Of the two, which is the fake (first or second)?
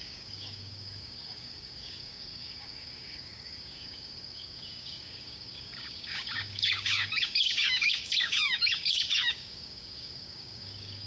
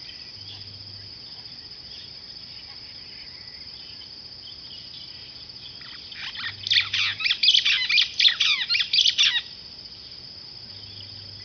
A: first